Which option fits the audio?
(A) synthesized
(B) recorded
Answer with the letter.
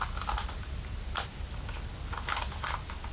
B